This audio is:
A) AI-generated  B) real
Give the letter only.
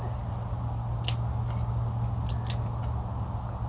B